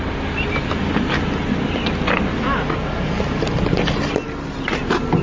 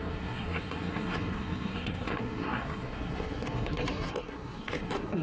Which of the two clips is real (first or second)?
first